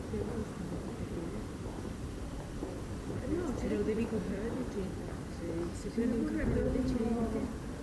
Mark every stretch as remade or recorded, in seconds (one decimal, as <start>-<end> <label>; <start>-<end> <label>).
0.0-7.8 remade